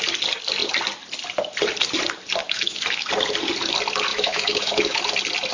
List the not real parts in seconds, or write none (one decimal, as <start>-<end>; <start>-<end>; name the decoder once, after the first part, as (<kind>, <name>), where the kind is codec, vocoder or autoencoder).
2.4-3.1 (autoencoder, DAC-VAE); 4.1-5.0